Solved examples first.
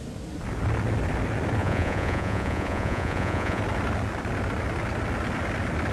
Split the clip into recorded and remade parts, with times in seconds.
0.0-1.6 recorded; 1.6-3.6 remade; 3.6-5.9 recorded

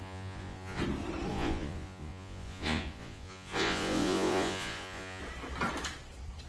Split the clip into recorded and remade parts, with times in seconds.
0.0-0.8 remade; 0.8-1.3 recorded; 1.3-5.2 remade; 5.2-6.5 recorded

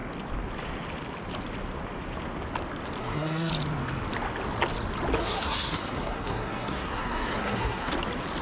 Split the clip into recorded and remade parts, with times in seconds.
0.0-3.0 recorded; 3.0-3.5 remade; 3.5-5.2 recorded; 5.2-7.9 remade; 7.9-8.4 recorded

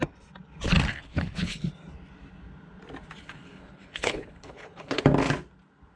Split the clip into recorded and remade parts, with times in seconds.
0.0-0.9 recorded; 0.9-1.7 remade; 1.7-3.2 recorded; 3.2-5.0 remade; 5.0-6.0 recorded

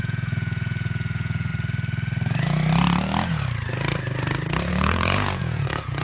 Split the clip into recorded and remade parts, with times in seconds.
0.0-1.5 remade; 1.5-4.7 recorded; 4.7-6.0 remade

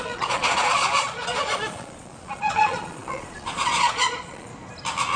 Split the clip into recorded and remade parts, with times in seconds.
0.0-4.5 remade; 4.5-5.2 recorded